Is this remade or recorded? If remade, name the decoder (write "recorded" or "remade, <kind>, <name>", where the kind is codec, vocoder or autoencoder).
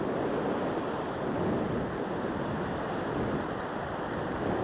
recorded